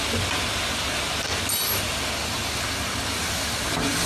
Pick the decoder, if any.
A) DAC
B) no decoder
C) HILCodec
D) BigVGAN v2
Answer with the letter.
B